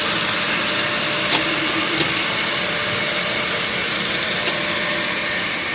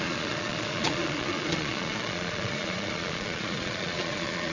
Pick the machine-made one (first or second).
second